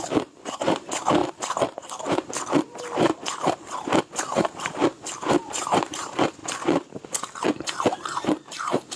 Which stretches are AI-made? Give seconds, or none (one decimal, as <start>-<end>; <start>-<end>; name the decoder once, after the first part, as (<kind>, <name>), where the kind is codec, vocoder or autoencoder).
0.0-4.8 (vocoder, BigVGAN v2); 5.3-6.4; 7.6-9.0